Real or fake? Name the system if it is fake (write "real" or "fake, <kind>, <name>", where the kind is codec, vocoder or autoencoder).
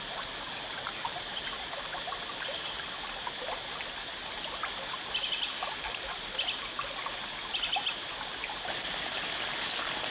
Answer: real